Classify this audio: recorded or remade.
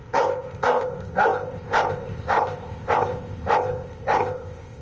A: remade